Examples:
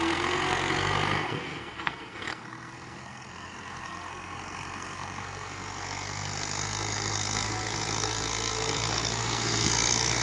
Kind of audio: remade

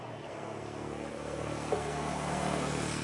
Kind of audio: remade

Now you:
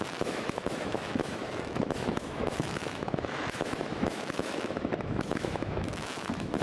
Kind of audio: remade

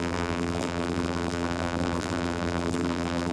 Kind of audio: remade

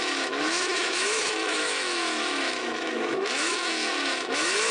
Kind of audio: remade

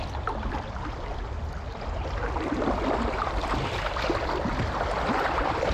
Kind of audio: recorded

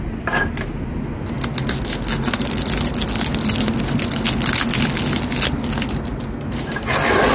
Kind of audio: recorded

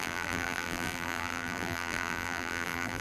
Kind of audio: remade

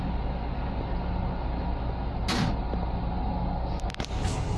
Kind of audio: recorded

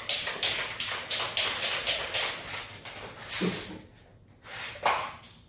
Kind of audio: recorded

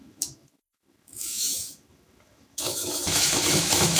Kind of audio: remade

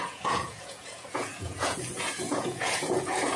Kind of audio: remade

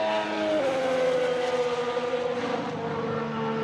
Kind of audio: recorded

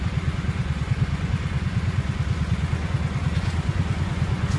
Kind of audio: remade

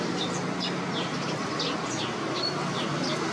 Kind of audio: recorded